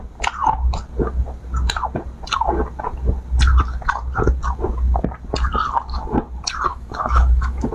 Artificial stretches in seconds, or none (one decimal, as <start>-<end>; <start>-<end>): 6.7-7.7